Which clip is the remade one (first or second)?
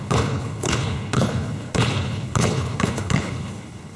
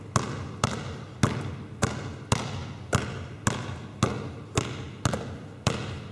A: first